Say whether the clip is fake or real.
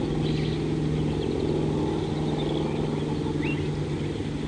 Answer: real